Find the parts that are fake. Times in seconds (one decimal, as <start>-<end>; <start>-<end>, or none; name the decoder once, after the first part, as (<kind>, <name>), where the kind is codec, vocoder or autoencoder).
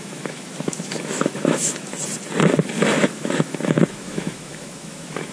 0.0-1.9 (autoencoder, DAC-VAE); 3.1-5.3